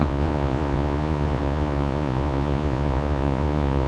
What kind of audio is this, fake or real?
fake